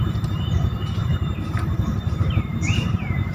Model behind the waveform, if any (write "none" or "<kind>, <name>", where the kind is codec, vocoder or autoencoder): vocoder, BigVGAN v2